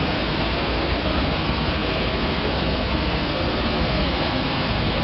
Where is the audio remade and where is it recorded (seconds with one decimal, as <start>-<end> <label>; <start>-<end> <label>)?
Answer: 0.0-5.0 remade